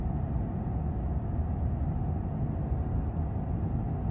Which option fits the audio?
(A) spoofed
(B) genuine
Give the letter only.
B